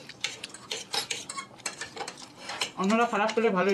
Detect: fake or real fake